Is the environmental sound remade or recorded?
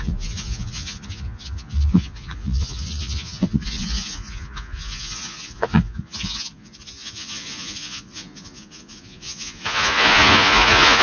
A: remade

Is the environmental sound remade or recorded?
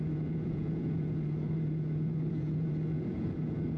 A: remade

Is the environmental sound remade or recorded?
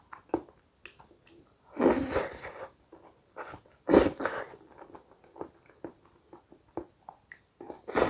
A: recorded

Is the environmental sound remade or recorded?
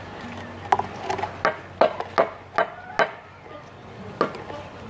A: recorded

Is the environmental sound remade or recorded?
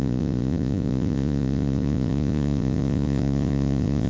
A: remade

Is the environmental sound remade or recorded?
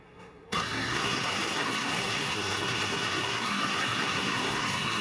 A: remade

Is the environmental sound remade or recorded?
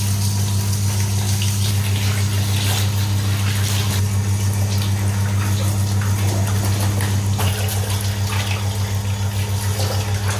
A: recorded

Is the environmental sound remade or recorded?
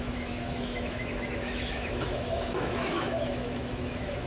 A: remade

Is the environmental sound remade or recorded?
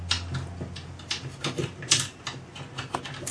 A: recorded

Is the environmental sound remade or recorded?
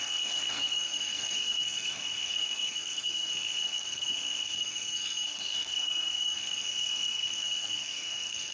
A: remade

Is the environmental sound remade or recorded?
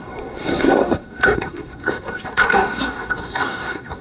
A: remade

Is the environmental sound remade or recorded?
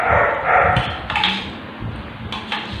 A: recorded